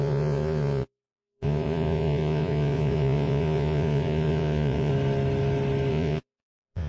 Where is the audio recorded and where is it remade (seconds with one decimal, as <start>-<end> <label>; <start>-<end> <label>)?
0.0-4.9 remade; 4.9-5.9 recorded; 5.9-6.9 remade

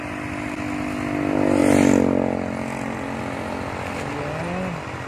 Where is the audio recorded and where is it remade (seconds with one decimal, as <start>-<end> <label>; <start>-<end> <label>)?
0.0-5.1 recorded

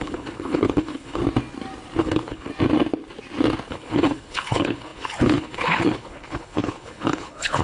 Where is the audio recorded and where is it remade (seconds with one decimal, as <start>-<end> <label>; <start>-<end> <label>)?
0.0-1.2 remade; 1.2-2.0 recorded; 2.0-2.5 remade; 2.5-3.7 recorded; 3.7-7.6 remade

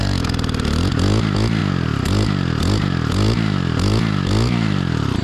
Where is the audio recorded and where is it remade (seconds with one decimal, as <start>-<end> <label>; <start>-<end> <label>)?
0.0-5.2 recorded

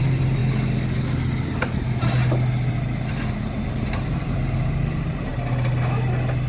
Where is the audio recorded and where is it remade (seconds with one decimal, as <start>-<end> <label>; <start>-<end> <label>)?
0.0-0.4 remade; 0.4-3.1 recorded; 3.1-5.3 remade; 5.3-6.5 recorded

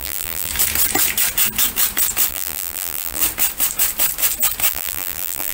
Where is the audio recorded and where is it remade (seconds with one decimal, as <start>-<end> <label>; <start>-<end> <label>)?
0.0-0.5 remade; 0.5-2.3 recorded; 2.3-3.2 remade; 3.2-4.7 recorded; 4.7-5.5 remade

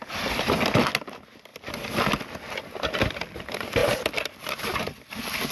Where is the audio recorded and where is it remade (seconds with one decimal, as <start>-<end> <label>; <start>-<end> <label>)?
0.0-3.8 recorded; 3.8-5.1 remade; 5.1-5.5 recorded